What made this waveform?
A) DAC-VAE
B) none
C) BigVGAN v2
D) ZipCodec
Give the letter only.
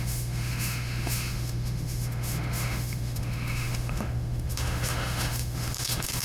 A